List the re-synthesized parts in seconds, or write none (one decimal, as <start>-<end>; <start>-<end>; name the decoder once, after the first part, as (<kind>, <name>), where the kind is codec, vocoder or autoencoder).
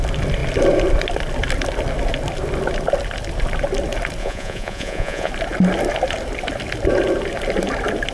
4.2-5.3 (vocoder, Vocos)